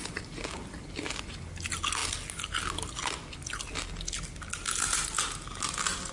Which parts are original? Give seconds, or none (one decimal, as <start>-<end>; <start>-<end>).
0.0-6.1